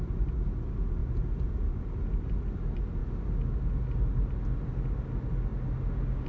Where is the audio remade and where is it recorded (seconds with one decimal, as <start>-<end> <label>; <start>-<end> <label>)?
0.0-6.3 recorded